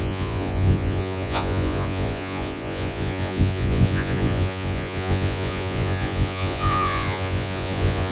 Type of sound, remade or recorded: remade